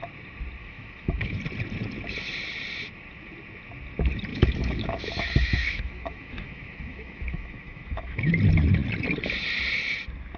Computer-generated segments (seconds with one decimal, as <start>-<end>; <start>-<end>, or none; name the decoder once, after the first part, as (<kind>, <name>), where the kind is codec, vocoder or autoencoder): 0.6-1.4 (autoencoder, DAC-VAE); 4.3-8.3